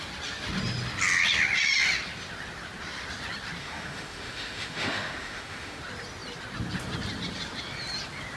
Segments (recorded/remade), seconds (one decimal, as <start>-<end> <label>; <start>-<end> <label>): 0.0-3.6 recorded; 3.6-5.8 remade; 5.8-8.4 recorded